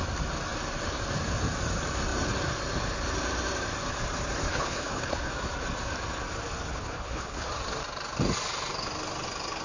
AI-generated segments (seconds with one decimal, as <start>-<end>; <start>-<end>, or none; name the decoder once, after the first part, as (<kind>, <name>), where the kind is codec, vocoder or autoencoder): 4.5-5.3 (codec, HILCodec); 6.7-7.5